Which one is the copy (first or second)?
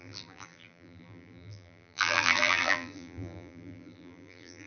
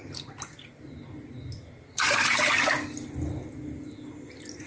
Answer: first